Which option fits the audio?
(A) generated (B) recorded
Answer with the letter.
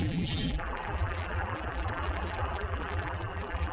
A